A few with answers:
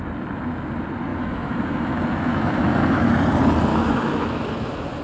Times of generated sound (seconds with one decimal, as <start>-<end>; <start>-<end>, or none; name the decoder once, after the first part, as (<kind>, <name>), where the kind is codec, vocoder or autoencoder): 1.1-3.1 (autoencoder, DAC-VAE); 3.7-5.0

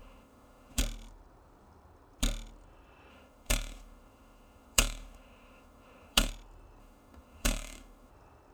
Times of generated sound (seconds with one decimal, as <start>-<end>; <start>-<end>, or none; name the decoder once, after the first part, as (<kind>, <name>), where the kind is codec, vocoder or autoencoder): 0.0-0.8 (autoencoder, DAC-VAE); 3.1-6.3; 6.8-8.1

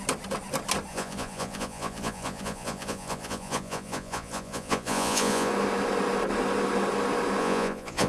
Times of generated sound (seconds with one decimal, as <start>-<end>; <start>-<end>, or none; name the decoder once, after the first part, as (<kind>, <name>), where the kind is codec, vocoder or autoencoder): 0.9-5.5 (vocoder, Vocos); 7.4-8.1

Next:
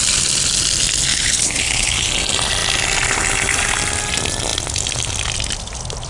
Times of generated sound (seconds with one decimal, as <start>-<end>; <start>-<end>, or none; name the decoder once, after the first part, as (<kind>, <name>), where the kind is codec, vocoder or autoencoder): 1.1-2.1 (codec, HILCodec)

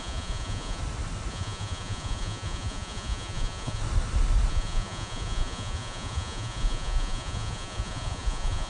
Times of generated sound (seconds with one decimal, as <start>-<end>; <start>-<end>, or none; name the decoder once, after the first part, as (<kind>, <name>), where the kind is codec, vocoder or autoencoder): 0.0-0.8 (vocoder, Vocos); 1.3-3.8; 4.5-8.7